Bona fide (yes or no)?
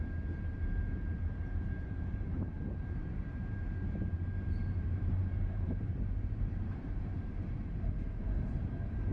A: no